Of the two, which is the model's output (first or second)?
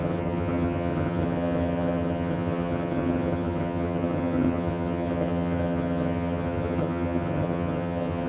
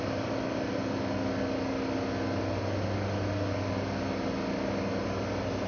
first